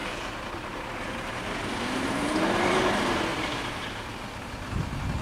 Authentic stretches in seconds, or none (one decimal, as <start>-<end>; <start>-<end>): 2.9-3.3; 4.1-5.2